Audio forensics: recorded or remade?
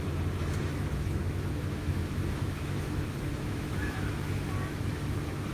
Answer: remade